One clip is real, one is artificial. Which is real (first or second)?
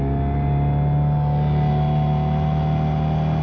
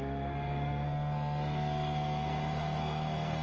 first